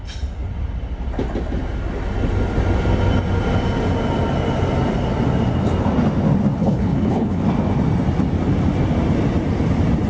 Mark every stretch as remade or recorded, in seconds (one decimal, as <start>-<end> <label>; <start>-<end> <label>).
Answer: 0.0-6.6 recorded; 6.6-7.4 remade; 7.4-10.1 recorded